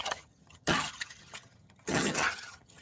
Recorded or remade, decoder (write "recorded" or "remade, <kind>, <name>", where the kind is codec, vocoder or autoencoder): remade, vocoder, HiFi-GAN